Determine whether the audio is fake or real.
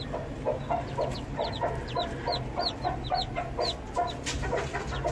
real